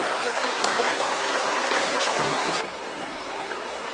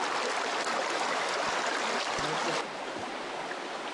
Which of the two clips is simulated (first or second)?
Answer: first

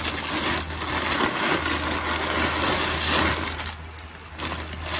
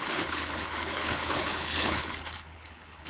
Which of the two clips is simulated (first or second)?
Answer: second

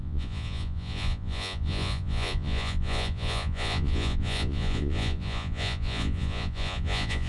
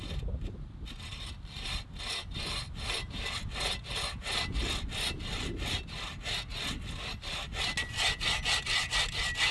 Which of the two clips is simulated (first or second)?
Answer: first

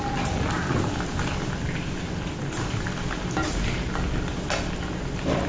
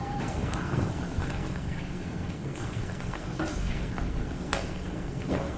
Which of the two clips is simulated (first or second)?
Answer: second